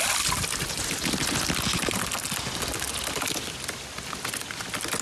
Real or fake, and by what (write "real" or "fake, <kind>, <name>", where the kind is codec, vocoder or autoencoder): real